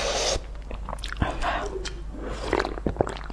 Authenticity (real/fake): real